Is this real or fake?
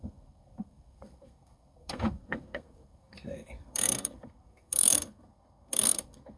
fake